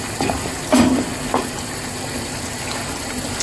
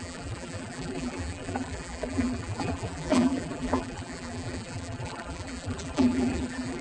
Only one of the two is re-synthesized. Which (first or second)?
second